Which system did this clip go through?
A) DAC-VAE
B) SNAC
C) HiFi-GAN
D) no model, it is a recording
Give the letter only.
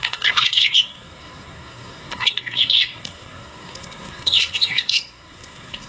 B